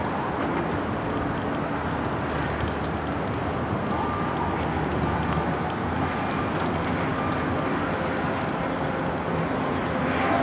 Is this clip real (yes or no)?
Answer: yes